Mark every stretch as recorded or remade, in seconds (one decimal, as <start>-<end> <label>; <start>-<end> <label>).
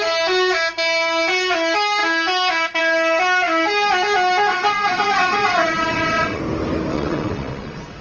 0.0-4.5 recorded; 4.5-6.4 remade; 6.4-6.9 recorded; 6.9-8.0 remade